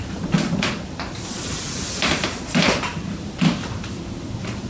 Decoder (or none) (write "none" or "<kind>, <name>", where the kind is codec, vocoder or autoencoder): none